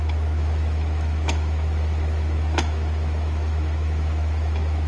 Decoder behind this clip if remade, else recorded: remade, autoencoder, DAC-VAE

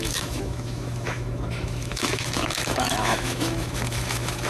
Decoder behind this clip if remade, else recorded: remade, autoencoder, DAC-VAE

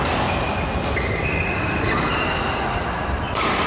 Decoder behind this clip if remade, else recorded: recorded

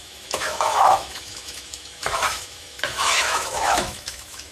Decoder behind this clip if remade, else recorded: remade, autoencoder, DAC-VAE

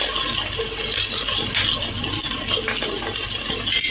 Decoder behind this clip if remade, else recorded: recorded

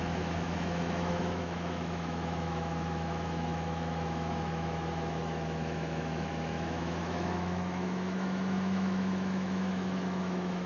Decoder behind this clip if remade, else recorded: remade, autoencoder, DAC-VAE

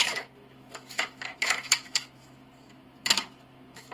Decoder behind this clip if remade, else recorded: remade, autoencoder, DAC-VAE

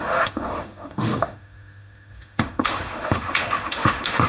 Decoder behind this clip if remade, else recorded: remade, autoencoder, DAC-VAE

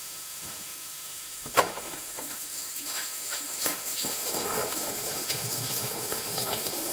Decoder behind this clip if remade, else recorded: remade, autoencoder, DAC-VAE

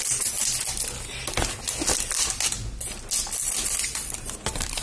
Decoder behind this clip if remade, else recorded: recorded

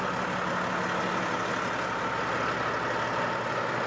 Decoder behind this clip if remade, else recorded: recorded